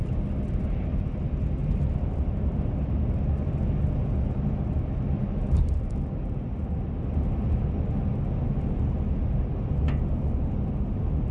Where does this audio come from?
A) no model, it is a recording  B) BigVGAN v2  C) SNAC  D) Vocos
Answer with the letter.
A